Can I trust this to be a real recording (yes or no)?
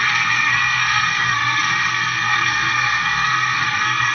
no